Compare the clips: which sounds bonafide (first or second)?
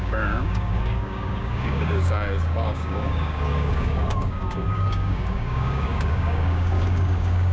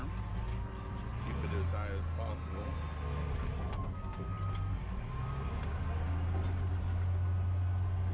second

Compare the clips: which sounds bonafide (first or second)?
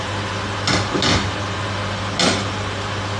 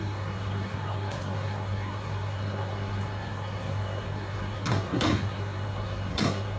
first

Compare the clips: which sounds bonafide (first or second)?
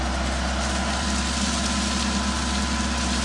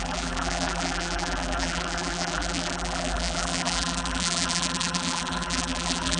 first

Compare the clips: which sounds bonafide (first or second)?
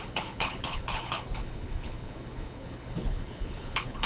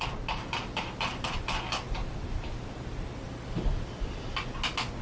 second